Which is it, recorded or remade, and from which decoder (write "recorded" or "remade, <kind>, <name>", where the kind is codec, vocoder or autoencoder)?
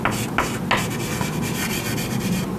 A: recorded